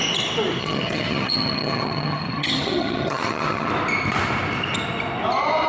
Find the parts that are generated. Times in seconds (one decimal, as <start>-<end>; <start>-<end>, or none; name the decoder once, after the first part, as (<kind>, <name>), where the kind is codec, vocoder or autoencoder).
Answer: 0.6-3.7 (vocoder, HiFi-GAN)